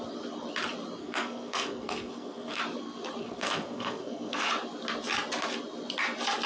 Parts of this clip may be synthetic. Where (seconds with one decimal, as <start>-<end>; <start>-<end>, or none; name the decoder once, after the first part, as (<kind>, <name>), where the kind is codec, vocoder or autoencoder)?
1.0-2.6 (codec, SNAC); 3.2-4.5